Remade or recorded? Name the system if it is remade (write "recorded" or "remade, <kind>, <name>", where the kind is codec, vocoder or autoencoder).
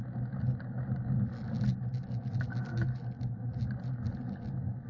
recorded